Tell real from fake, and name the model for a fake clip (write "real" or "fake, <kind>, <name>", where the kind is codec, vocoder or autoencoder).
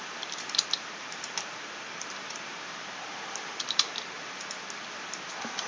fake, vocoder, BigVGAN v2